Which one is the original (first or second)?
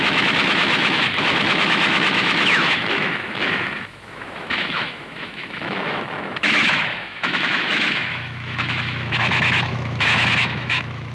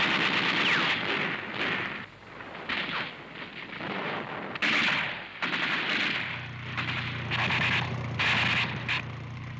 second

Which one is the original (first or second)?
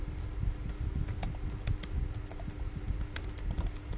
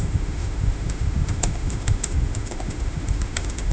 first